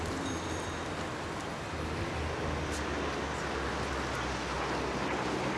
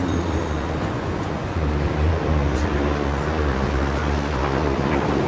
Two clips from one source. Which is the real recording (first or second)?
first